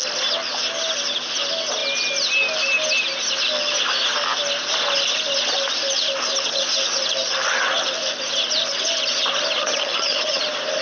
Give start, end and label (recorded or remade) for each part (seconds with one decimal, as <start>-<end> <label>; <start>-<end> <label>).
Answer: 0.0-9.6 recorded; 9.6-10.4 remade; 10.4-10.8 recorded